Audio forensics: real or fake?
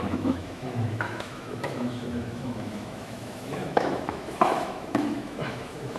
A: fake